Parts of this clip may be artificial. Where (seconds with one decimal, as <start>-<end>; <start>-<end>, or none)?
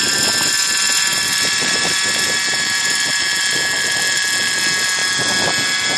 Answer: 1.1-3.4